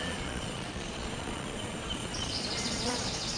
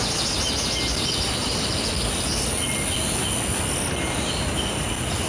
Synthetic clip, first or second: first